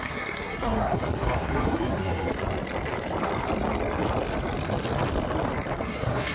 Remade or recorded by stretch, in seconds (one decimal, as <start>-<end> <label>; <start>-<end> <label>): 0.0-2.3 remade; 2.3-5.8 recorded; 5.8-6.3 remade